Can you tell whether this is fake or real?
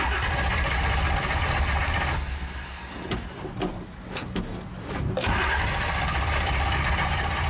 real